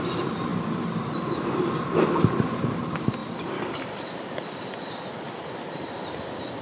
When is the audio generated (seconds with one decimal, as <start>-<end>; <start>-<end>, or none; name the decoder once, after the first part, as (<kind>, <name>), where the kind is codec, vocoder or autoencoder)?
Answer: 0.5-1.7 (vocoder, BigVGAN v2); 3.2-5.9